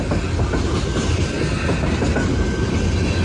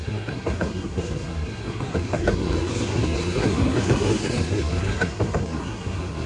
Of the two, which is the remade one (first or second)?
second